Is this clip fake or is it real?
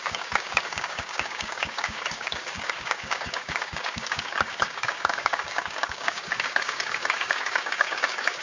fake